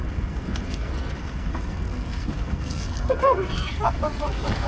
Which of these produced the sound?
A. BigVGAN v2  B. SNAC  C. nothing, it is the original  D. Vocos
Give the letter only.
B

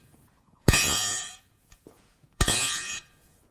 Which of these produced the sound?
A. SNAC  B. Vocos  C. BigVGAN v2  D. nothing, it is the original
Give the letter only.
B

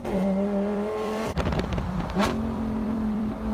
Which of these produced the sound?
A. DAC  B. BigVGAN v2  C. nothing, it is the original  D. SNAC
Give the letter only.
B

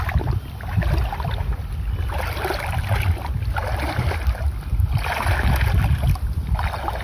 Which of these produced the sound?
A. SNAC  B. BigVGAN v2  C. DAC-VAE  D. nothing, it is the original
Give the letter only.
D